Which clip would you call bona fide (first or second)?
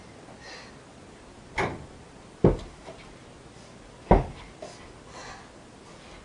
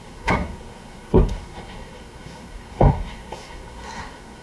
first